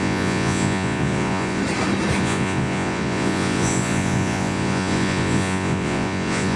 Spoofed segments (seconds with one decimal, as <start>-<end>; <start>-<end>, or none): 0.0-1.6; 2.2-6.6